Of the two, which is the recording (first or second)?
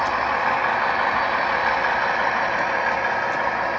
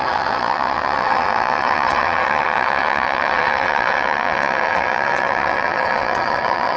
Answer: first